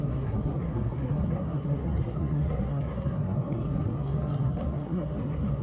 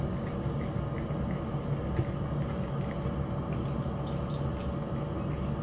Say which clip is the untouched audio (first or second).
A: second